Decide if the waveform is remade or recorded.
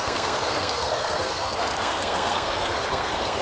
remade